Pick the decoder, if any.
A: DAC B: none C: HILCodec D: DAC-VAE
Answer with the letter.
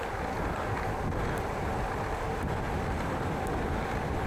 B